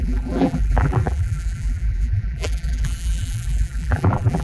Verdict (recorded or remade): remade